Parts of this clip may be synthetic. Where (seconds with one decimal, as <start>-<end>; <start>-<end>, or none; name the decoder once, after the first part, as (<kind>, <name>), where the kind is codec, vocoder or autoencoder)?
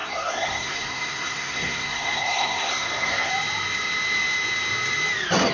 0.0-3.3 (codec, SNAC)